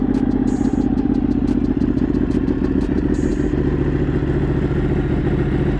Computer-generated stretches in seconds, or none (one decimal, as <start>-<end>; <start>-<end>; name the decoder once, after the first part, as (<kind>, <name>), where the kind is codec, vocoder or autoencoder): none